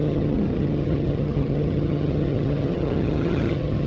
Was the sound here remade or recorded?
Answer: remade